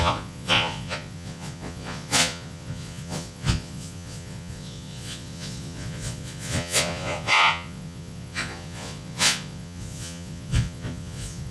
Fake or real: fake